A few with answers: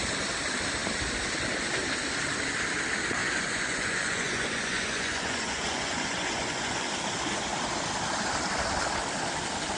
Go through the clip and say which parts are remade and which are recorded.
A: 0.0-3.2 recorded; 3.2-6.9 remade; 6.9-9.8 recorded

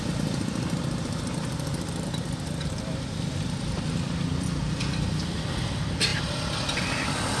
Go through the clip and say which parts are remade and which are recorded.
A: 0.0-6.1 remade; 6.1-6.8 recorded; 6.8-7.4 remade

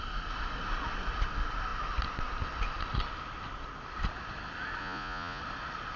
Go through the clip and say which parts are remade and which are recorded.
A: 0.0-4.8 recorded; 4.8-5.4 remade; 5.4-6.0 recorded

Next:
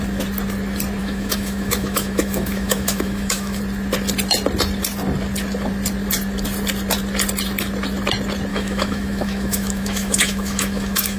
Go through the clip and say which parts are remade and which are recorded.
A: 0.0-1.0 recorded; 1.0-3.6 remade; 3.6-8.5 recorded; 8.5-11.2 remade

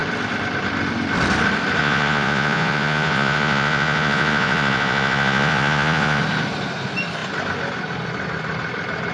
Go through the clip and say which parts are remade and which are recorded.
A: 0.0-1.8 recorded; 1.8-6.2 remade; 6.2-9.1 recorded

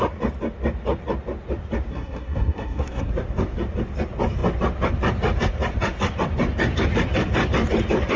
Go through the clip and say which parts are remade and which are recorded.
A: 0.0-1.9 recorded; 1.9-3.1 remade; 3.1-8.2 recorded

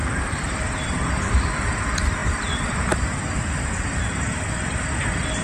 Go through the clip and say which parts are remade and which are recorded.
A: 0.0-5.4 recorded